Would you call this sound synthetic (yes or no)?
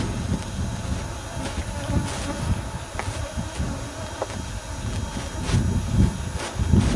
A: no